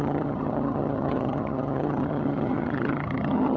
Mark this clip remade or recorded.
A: remade